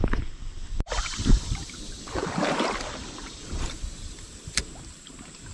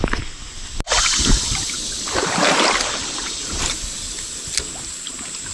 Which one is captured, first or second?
second